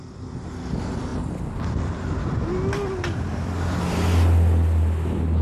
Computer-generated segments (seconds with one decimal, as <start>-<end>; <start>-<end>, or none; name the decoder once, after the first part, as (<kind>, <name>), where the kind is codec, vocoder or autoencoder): none